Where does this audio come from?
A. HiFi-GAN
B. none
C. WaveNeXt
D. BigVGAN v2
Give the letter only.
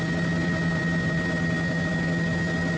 B